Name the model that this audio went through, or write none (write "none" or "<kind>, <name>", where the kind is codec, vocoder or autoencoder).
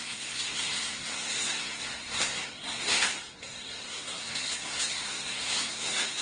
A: codec, SNAC